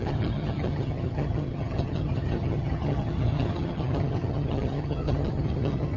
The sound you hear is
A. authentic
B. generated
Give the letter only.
B